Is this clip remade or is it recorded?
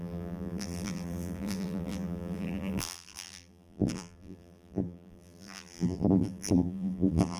remade